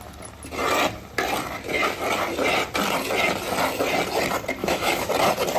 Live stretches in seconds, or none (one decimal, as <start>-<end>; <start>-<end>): 0.0-4.6; 5.1-5.6